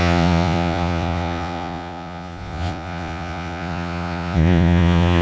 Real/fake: fake